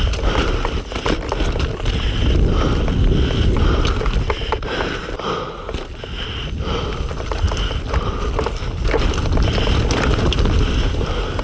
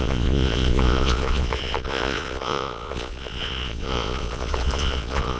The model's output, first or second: second